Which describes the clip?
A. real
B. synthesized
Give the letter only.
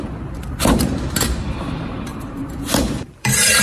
B